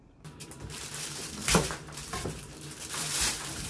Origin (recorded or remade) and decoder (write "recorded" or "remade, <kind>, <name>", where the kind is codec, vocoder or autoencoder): remade, vocoder, BigVGAN v2